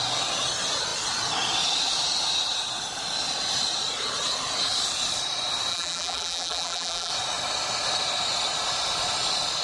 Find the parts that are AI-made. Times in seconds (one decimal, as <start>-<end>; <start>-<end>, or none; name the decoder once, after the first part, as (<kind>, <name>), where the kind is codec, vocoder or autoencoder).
5.7-7.1 (vocoder, BigVGAN v2)